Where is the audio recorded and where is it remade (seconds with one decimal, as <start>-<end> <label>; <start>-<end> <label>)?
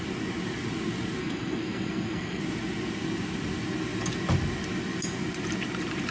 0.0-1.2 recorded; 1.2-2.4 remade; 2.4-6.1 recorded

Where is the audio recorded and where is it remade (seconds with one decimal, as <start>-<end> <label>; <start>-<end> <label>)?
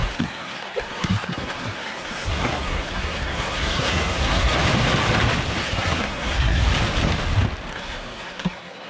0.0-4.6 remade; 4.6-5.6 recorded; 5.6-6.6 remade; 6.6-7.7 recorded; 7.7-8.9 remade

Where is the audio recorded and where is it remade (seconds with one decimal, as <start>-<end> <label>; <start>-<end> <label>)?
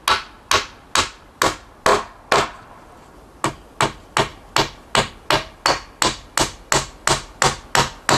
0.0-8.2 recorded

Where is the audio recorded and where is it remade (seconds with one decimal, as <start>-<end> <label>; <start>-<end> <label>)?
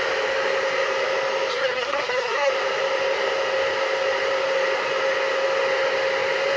0.0-1.5 recorded; 1.5-2.5 remade; 2.5-6.6 recorded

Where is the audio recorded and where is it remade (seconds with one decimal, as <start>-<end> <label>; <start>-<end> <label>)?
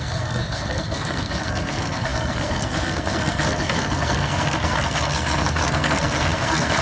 0.0-6.8 remade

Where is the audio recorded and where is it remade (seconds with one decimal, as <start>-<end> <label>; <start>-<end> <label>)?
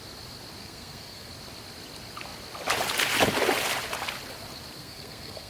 0.0-0.6 recorded; 0.6-1.3 remade; 1.3-4.8 recorded; 4.8-5.5 remade